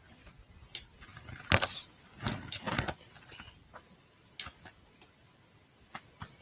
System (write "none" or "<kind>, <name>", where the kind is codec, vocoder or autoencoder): none